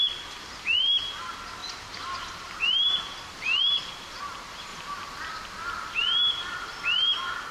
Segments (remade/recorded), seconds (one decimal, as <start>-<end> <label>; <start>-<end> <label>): 0.0-1.6 recorded; 1.6-3.2 remade; 3.2-4.7 recorded; 4.7-5.3 remade; 5.3-6.0 recorded; 6.0-6.8 remade; 6.8-7.5 recorded